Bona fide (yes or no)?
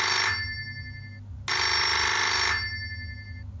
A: yes